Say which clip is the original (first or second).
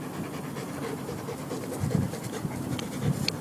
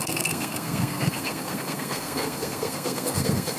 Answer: first